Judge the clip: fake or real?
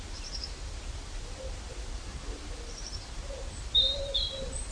fake